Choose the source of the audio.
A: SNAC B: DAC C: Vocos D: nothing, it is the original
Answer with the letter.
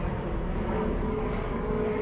B